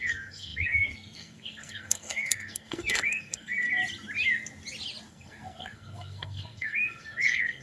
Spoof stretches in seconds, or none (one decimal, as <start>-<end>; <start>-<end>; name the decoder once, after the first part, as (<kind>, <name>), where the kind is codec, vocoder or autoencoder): 0.0-3.8 (codec, SNAC); 5.1-7.6